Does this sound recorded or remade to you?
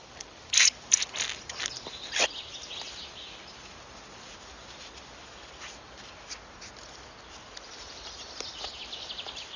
recorded